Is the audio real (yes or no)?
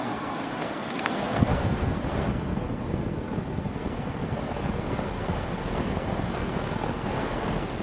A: no